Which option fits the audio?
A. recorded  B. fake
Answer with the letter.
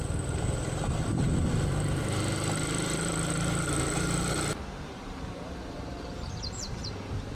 B